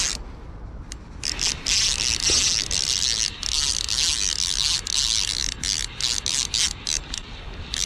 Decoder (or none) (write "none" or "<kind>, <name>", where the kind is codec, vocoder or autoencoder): none